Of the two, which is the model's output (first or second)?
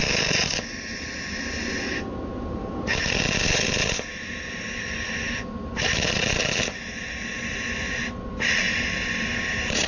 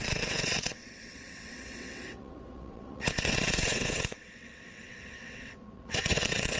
second